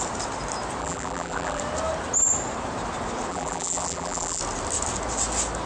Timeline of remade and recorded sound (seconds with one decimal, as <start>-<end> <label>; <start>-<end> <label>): 0.0-0.8 recorded; 0.8-1.6 remade; 1.6-3.3 recorded; 3.3-4.4 remade; 4.4-5.7 recorded

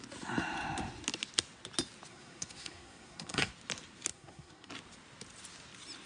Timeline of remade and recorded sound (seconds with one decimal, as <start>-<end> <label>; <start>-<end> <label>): 0.0-2.1 recorded; 2.1-3.5 remade; 3.5-4.1 recorded; 4.1-4.7 remade; 4.7-6.1 recorded